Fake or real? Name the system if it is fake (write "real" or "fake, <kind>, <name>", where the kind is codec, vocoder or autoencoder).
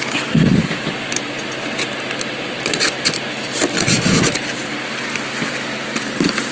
real